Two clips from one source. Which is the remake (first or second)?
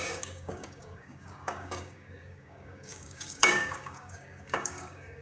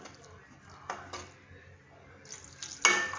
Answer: first